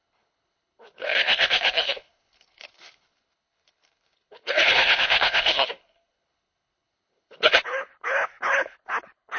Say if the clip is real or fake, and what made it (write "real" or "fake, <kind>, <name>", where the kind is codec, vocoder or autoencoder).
fake, codec, HILCodec